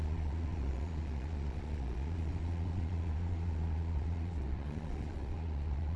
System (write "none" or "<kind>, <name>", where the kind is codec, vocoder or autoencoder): vocoder, Vocos